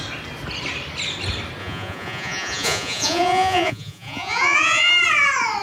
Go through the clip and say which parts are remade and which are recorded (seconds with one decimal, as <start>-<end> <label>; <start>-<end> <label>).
0.0-1.6 recorded; 1.6-4.9 remade; 4.9-5.6 recorded